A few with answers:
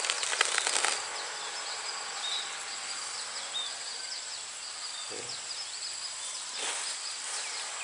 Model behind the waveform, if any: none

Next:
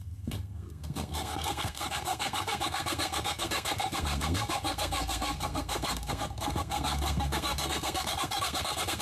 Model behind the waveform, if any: codec, SNAC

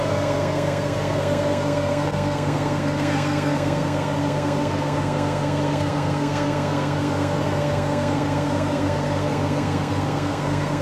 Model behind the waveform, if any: codec, SNAC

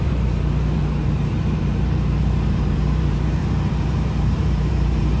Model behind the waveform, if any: vocoder, BigVGAN v2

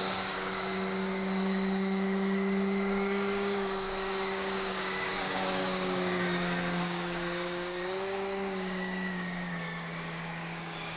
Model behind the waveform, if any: codec, DAC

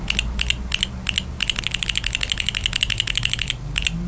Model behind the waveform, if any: none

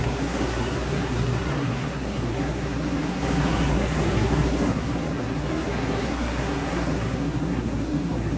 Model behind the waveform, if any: codec, SNAC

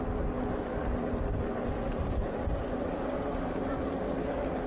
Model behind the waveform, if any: none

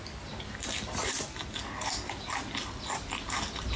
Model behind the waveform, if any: none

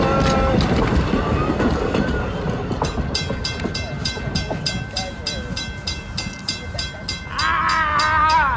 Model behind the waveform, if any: none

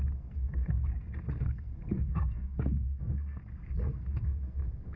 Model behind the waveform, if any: codec, SNAC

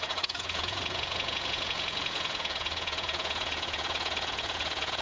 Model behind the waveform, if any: vocoder, Vocos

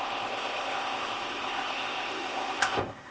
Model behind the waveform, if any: codec, ZipCodec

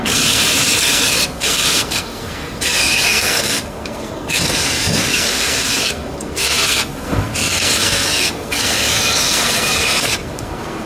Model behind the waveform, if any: codec, SNAC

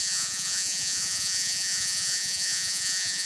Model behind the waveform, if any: vocoder, Vocos